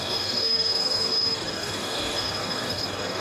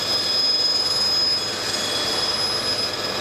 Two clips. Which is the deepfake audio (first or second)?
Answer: first